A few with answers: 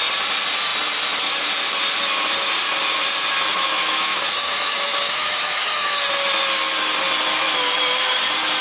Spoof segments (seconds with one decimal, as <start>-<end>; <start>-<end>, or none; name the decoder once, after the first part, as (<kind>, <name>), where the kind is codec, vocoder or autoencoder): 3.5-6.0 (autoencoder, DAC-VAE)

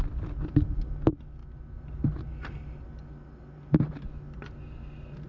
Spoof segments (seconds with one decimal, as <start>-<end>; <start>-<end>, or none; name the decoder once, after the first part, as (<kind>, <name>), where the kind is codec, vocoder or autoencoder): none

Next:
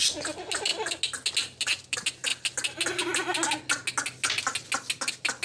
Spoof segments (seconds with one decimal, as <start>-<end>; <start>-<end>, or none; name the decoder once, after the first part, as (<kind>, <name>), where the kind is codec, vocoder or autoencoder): none